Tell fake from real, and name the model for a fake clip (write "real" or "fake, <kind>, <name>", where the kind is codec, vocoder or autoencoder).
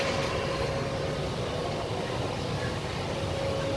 real